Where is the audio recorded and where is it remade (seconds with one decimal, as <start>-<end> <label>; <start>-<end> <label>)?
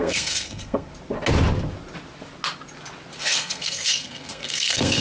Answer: 0.0-0.9 remade; 0.9-3.2 recorded; 3.2-5.0 remade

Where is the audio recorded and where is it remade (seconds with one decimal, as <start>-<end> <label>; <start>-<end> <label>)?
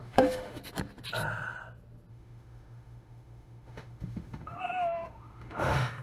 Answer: 0.0-0.6 remade; 0.6-2.1 recorded; 2.1-6.0 remade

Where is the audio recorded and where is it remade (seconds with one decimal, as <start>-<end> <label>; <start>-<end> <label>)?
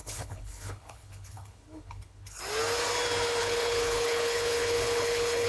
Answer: 0.0-2.4 remade; 2.4-3.4 recorded; 3.4-5.5 remade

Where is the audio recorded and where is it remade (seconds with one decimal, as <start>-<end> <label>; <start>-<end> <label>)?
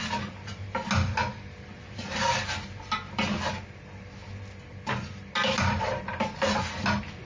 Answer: 0.0-7.2 recorded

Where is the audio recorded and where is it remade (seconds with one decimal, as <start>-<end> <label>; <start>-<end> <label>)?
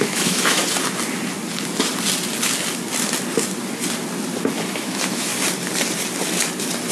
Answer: 0.0-0.6 remade; 0.6-4.7 recorded; 4.7-5.3 remade; 5.3-6.9 recorded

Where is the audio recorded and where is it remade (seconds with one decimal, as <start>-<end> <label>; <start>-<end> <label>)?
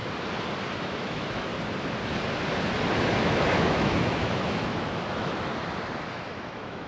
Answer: 0.0-0.8 recorded; 0.8-1.5 remade; 1.5-3.2 recorded; 3.2-5.5 remade; 5.5-6.1 recorded; 6.1-6.9 remade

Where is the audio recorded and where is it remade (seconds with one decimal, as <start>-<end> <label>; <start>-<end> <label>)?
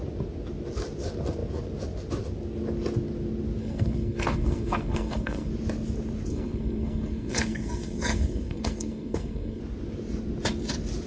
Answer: 0.0-3.6 recorded; 3.6-5.5 remade; 5.5-6.3 recorded; 6.3-9.6 remade; 9.6-11.1 recorded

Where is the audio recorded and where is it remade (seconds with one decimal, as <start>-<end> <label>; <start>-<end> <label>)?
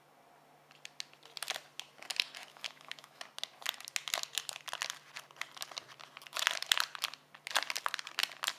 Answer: 0.0-2.5 recorded; 2.5-3.2 remade; 3.2-8.6 recorded